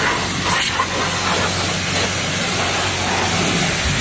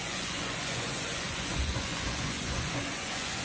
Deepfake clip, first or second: second